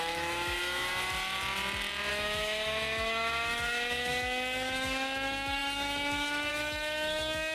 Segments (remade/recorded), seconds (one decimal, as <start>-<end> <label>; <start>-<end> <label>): 0.0-0.9 remade; 0.9-2.1 recorded; 2.1-7.5 remade